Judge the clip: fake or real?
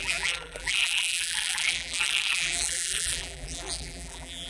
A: fake